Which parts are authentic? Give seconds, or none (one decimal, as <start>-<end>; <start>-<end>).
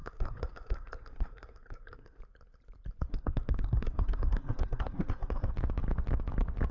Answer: 2.2-3.1; 5.5-6.7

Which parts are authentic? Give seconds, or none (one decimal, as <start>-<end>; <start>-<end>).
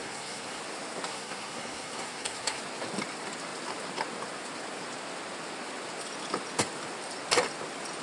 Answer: 0.6-1.1; 2.6-8.0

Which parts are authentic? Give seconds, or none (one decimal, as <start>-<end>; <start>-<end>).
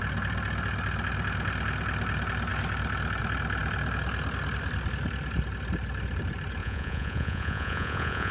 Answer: 0.0-6.6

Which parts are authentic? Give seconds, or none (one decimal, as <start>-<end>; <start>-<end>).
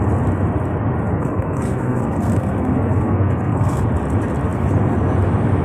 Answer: 0.0-1.1; 3.8-5.6